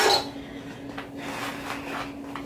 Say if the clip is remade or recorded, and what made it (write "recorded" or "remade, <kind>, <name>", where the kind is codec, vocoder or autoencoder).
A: recorded